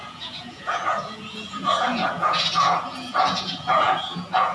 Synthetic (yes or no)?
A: yes